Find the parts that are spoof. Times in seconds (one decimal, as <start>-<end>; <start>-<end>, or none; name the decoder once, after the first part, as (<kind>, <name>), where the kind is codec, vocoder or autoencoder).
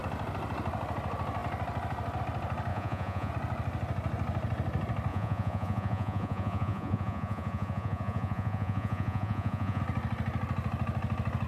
2.7-3.3 (vocoder, Vocos); 5.1-9.8